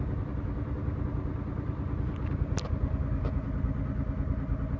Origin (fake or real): real